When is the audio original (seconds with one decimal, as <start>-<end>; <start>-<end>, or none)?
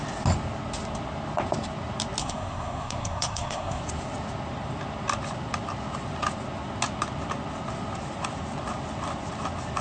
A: 0.0-2.2; 3.8-9.8